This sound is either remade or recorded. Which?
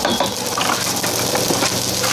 recorded